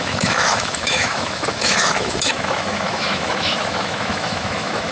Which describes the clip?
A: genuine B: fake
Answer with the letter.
B